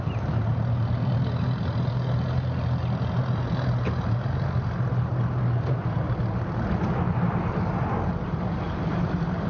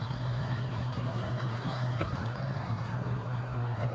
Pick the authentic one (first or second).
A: first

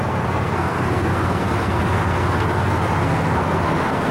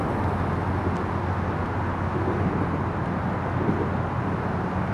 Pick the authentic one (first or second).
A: second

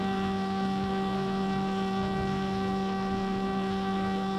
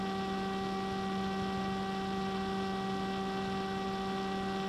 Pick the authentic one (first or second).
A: second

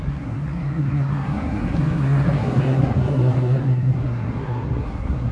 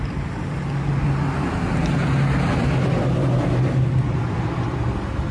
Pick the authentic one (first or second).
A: second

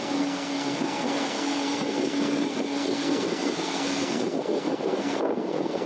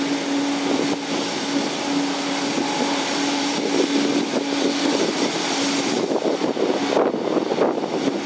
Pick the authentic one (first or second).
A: second